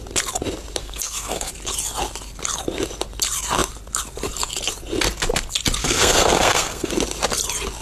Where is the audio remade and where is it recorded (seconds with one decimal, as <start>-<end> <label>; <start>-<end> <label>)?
0.0-0.8 recorded; 0.8-1.5 remade; 1.5-5.8 recorded; 5.8-6.9 remade; 6.9-7.8 recorded